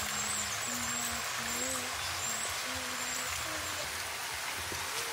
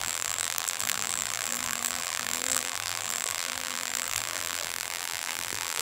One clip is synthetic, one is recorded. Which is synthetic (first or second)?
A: second